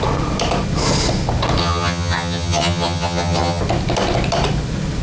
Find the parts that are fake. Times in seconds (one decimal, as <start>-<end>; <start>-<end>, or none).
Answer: 1.6-3.6